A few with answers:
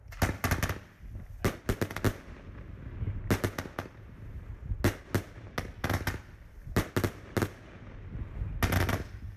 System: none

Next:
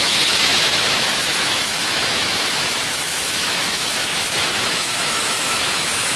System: autoencoder, DAC-VAE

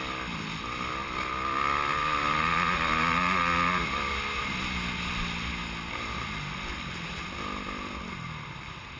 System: none